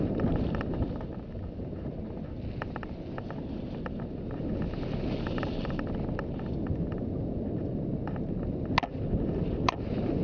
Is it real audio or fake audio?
real